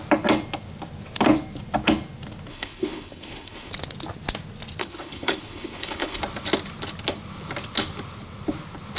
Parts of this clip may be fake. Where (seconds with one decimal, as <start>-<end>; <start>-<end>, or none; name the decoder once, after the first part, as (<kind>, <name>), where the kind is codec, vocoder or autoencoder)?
2.5-3.7 (codec, HILCodec); 4.8-6.2